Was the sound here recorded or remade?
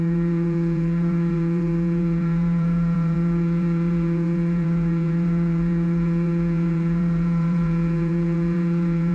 remade